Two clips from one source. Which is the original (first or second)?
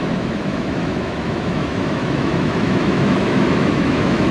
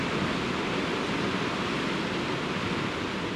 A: second